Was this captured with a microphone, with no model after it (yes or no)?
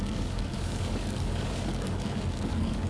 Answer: no